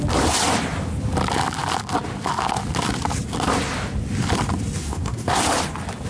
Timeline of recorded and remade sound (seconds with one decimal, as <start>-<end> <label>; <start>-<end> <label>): 0.0-4.8 recorded; 4.8-5.4 remade; 5.4-6.1 recorded